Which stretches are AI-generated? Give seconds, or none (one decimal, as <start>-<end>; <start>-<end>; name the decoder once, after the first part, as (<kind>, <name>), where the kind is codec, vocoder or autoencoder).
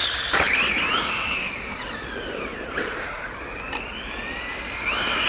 none